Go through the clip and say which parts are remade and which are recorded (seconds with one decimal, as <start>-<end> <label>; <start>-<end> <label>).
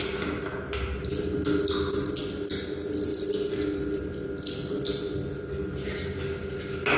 0.0-7.0 recorded